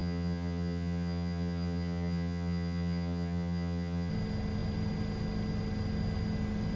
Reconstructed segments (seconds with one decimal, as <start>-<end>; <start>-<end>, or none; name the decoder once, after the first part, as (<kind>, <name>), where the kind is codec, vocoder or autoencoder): 0.0-4.1 (vocoder, HiFi-GAN)